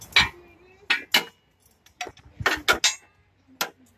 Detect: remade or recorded recorded